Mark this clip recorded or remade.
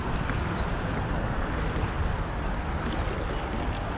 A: recorded